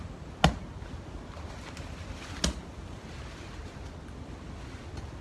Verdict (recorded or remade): recorded